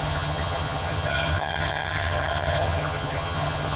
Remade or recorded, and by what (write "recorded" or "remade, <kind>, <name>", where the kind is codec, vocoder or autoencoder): remade, vocoder, HiFi-GAN